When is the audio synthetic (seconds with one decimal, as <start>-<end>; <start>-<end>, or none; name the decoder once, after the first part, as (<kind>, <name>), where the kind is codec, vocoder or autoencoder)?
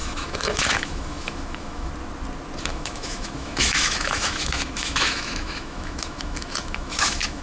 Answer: 0.0-1.9 (autoencoder, DAC-VAE); 2.7-7.4